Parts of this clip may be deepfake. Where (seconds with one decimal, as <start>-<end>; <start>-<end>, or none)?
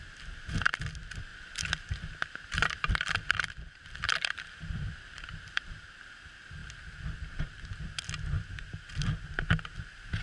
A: 1.3-6.0